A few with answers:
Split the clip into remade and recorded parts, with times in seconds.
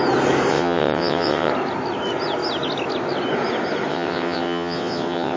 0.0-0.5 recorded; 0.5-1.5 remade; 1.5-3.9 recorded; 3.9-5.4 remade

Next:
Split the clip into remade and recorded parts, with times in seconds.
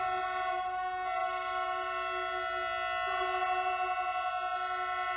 0.0-5.2 recorded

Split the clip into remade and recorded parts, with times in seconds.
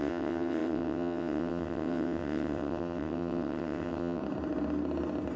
0.0-4.2 remade; 4.2-5.4 recorded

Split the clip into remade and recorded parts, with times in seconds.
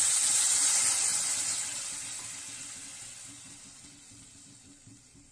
0.0-5.3 recorded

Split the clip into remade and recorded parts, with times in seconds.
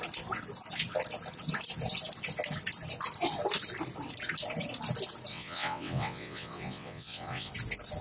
0.0-5.3 recorded; 5.3-7.5 remade; 7.5-8.0 recorded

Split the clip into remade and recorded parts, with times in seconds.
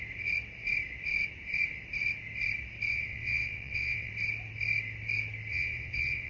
0.0-2.9 recorded; 2.9-4.1 remade; 4.1-5.5 recorded; 5.5-6.3 remade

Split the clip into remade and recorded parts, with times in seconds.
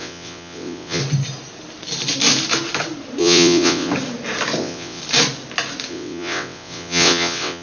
0.0-1.0 remade; 1.0-3.2 recorded; 3.2-3.9 remade; 3.9-4.6 recorded; 4.6-5.0 remade; 5.0-5.9 recorded; 5.9-7.6 remade